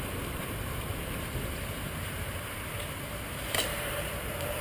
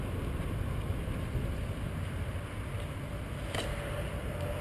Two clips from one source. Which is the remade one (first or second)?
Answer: first